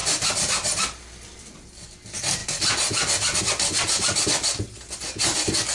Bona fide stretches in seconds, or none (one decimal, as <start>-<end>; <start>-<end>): 0.0-5.7